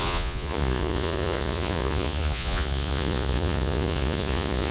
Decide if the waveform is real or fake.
fake